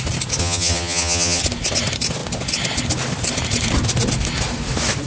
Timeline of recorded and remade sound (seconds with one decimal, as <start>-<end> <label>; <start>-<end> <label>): 0.0-0.4 recorded; 0.4-1.4 remade; 1.4-5.1 recorded